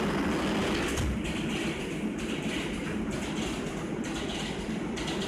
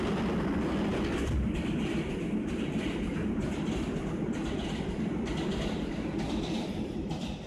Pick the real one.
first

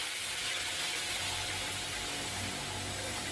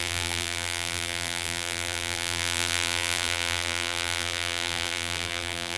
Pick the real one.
first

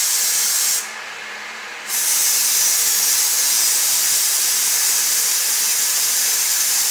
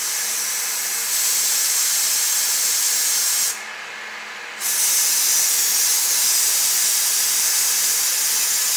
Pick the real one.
second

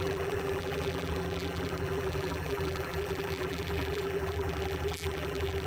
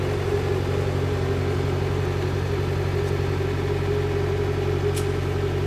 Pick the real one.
second